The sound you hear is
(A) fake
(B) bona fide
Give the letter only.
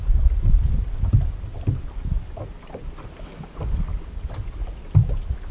B